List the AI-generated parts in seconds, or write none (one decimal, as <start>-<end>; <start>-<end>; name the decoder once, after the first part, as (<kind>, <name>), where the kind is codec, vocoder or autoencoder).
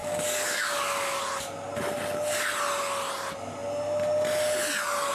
0.0-1.2 (codec, DAC)